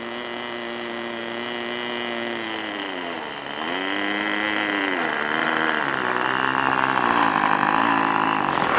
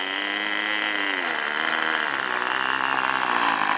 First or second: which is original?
second